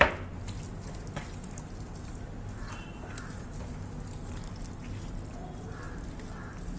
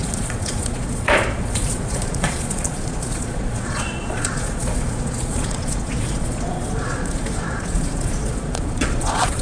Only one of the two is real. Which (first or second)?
first